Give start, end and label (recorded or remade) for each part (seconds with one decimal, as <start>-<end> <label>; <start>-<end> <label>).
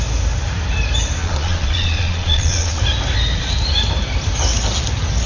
0.0-1.2 recorded; 1.2-2.8 remade; 2.8-5.3 recorded